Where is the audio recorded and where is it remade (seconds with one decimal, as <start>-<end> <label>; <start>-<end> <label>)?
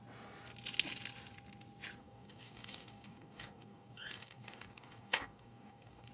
0.0-2.0 recorded; 2.0-6.1 remade